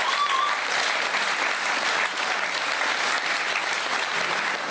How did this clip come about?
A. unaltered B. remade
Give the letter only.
A